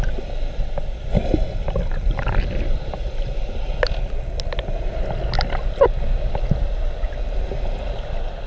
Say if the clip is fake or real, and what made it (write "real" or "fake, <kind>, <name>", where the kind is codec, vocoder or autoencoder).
real